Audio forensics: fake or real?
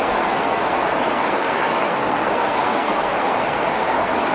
fake